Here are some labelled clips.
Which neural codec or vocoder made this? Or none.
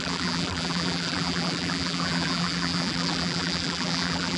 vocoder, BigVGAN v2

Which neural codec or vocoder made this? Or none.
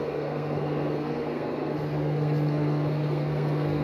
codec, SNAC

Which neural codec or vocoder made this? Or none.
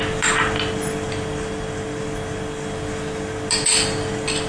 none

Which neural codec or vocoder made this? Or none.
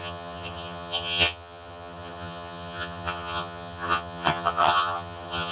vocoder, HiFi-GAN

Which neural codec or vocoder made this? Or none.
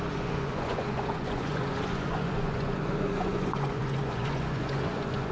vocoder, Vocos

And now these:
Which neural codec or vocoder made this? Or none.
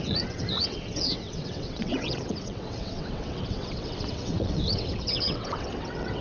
vocoder, WaveNeXt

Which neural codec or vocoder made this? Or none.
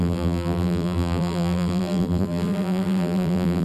vocoder, BigVGAN v2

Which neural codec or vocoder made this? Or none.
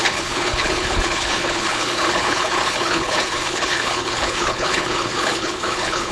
codec, HILCodec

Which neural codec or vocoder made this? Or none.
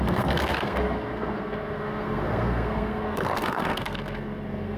codec, SNAC